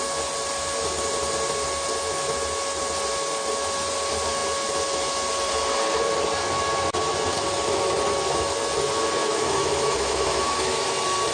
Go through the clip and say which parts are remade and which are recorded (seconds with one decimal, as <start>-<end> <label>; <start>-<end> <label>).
0.0-9.3 recorded; 9.3-10.8 remade; 10.8-11.3 recorded